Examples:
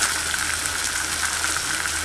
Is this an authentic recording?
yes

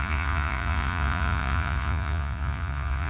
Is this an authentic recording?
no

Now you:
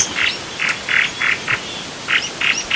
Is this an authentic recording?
yes